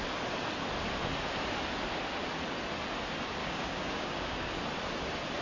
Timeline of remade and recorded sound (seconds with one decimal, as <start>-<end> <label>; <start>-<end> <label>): 0.0-3.4 recorded; 3.4-4.6 remade; 4.6-5.4 recorded

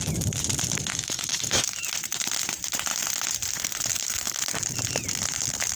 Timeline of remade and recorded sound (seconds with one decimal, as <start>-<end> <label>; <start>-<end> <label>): 0.0-0.9 recorded; 0.9-1.8 remade; 1.8-3.9 recorded; 3.9-4.4 remade; 4.4-5.8 recorded

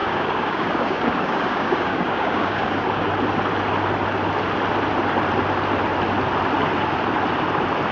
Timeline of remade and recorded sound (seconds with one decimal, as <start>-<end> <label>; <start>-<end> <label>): 0.0-3.1 remade; 3.1-7.9 recorded

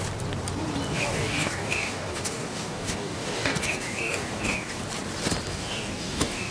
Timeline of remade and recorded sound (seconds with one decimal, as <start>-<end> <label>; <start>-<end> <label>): 0.0-0.9 recorded; 0.9-4.8 remade; 4.8-5.5 recorded; 5.5-6.5 remade

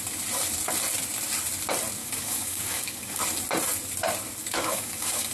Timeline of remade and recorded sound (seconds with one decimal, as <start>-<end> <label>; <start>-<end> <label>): 0.0-2.0 recorded; 2.0-3.2 remade; 3.2-4.4 recorded; 4.4-5.3 remade